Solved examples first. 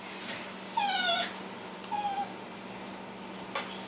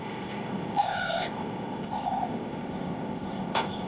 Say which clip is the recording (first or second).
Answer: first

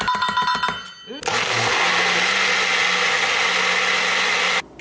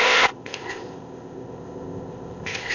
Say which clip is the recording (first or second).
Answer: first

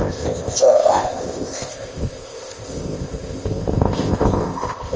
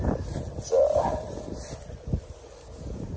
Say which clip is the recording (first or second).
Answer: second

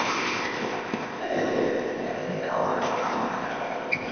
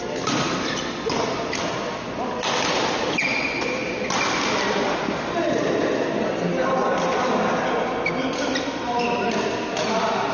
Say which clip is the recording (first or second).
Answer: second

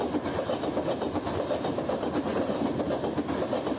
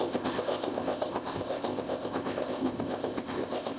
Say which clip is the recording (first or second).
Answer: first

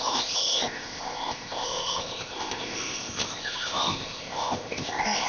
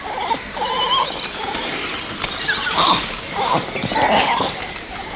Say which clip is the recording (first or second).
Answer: second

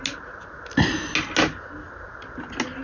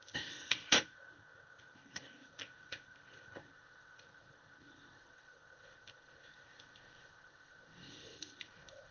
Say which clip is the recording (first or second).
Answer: first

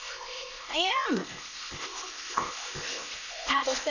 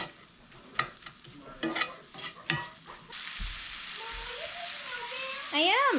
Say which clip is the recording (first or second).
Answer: second